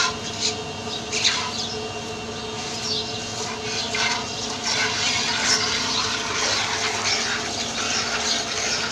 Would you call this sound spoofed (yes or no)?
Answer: no